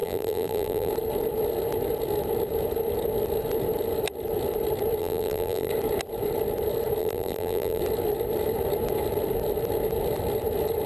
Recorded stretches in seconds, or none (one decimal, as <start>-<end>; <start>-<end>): 0.9-5.0; 5.7-7.0; 7.8-10.9